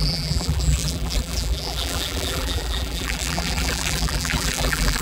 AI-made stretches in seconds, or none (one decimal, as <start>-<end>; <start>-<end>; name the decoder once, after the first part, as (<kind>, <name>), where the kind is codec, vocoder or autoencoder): 0.0-5.0 (vocoder, BigVGAN v2)